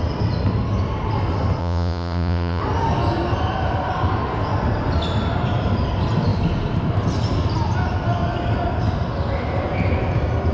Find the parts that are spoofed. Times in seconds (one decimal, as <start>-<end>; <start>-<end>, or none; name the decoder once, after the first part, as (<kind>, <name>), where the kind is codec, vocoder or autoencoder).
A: 1.6-2.6 (vocoder, Vocos)